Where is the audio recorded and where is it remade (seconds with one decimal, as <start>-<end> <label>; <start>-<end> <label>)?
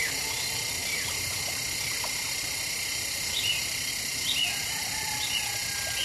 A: 0.0-0.8 recorded; 0.8-3.9 remade; 3.9-6.0 recorded